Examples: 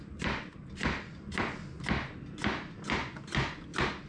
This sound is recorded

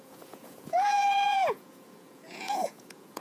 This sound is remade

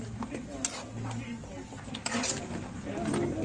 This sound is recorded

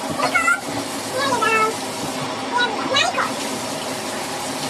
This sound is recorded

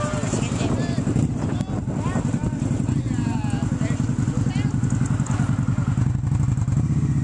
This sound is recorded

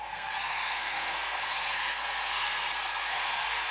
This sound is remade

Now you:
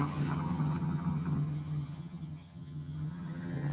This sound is remade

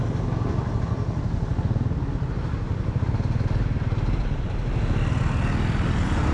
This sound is recorded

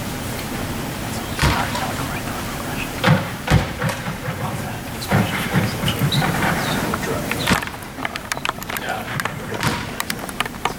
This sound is remade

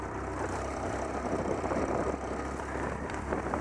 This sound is remade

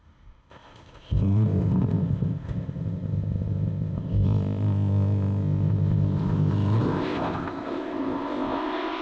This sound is remade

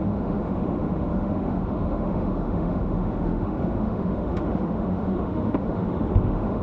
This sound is remade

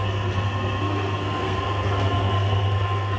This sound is remade